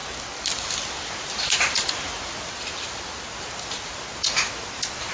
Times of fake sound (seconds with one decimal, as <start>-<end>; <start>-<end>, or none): none

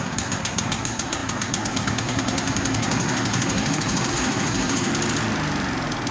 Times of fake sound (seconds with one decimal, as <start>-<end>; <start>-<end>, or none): 0.0-4.9

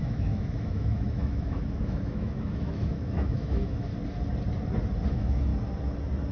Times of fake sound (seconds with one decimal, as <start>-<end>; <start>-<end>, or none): 0.0-3.9; 5.1-5.5